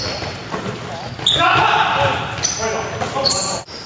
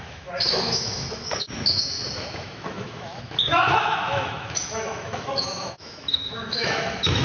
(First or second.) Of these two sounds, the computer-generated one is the second